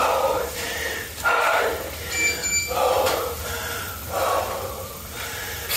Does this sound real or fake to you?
real